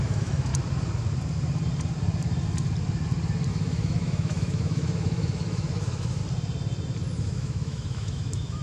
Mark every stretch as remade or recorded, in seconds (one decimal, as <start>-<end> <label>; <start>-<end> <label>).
0.0-0.5 remade; 0.5-3.5 recorded; 3.5-6.2 remade; 6.2-7.2 recorded; 7.2-8.6 remade